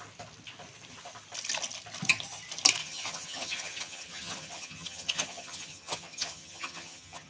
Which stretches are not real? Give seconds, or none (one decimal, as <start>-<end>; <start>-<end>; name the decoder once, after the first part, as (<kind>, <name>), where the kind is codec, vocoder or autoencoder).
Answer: 2.8-7.3 (vocoder, HiFi-GAN)